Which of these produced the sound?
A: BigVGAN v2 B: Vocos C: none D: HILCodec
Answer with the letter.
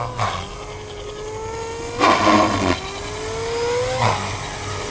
C